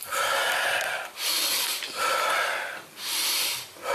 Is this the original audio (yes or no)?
yes